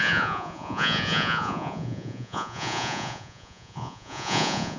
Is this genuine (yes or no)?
no